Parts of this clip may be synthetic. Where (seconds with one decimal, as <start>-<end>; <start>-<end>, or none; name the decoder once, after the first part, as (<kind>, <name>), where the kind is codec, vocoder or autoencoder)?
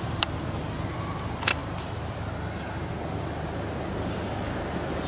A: 1.6-2.9 (vocoder, BigVGAN v2)